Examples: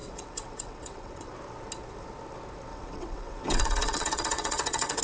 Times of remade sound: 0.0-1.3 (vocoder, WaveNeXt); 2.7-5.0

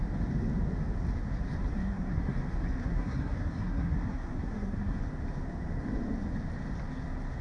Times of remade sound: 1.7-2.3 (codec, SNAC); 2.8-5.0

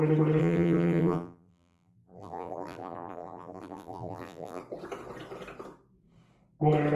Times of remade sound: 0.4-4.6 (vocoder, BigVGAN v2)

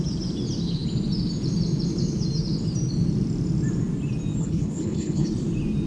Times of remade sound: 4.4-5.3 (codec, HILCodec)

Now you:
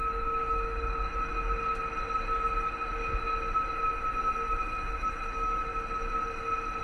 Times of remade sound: 0.0-1.3 (autoencoder, DAC-VAE); 4.5-5.7

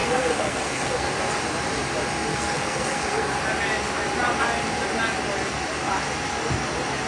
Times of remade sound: 0.0-1.1 (codec, SNAC); 2.3-3.4

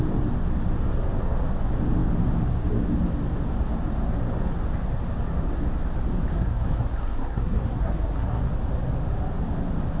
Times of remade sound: 6.3-8.4 (codec, SNAC)